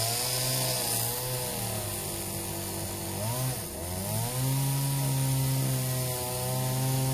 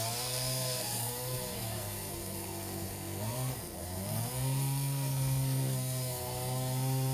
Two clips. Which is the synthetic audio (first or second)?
second